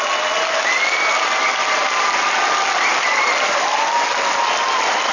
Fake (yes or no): no